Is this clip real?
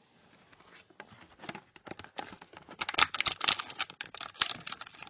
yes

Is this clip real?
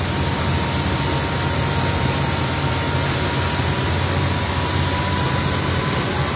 yes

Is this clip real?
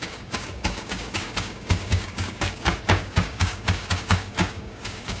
no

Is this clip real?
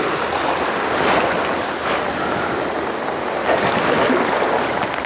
yes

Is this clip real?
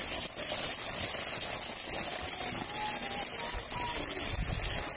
yes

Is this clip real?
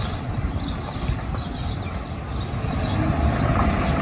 yes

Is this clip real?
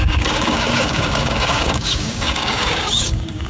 no